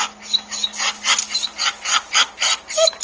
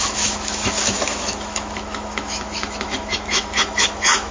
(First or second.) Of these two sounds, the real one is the first